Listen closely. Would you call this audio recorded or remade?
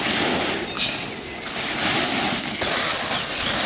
recorded